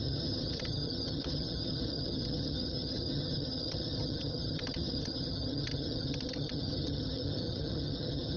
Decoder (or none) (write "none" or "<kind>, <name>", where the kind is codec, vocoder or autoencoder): vocoder, HiFi-GAN